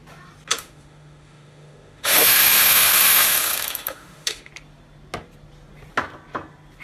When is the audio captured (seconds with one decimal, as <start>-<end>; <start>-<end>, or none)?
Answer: 0.0-0.5; 4.5-6.8